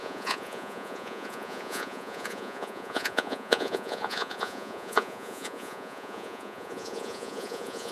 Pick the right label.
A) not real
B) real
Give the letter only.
A